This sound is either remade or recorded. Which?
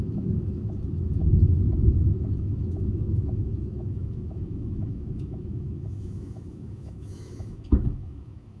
remade